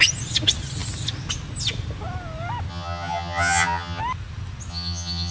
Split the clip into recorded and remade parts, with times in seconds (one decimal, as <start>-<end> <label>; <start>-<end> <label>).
0.0-2.7 recorded; 2.7-4.0 remade; 4.0-4.7 recorded; 4.7-5.3 remade

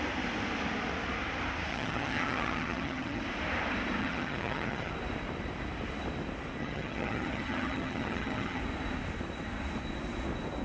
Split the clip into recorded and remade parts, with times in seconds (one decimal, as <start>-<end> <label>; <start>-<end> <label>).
0.0-1.7 recorded; 1.7-3.2 remade; 3.2-4.0 recorded; 4.0-4.9 remade; 4.9-6.6 recorded; 6.6-8.6 remade; 8.6-10.6 recorded

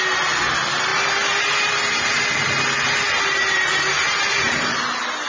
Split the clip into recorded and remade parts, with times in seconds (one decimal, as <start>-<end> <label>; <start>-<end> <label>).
0.0-5.3 recorded

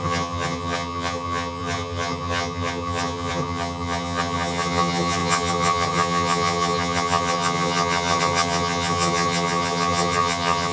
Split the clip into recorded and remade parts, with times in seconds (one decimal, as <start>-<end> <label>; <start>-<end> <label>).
0.0-10.7 remade